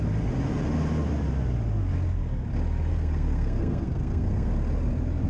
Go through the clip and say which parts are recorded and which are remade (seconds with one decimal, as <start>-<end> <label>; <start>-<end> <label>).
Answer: 0.0-2.9 recorded; 2.9-4.5 remade; 4.5-5.3 recorded